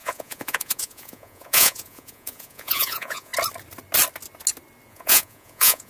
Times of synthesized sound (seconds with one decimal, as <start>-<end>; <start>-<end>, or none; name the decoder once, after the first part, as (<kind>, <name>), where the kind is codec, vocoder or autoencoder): 0.0-3.3 (vocoder, Vocos); 4.9-5.9